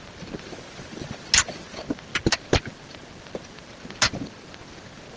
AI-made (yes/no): no